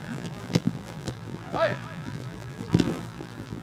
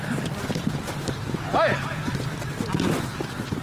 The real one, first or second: second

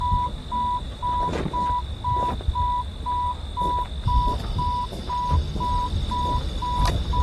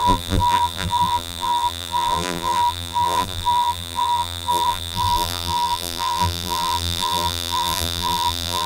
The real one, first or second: first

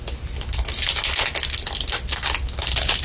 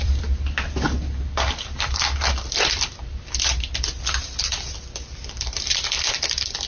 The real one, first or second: first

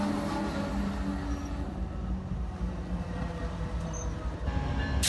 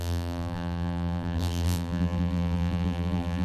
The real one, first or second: first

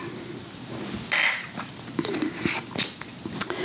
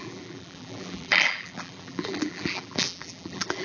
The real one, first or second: first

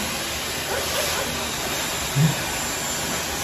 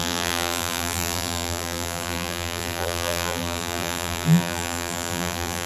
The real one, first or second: first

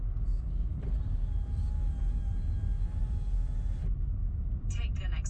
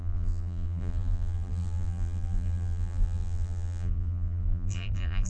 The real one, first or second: first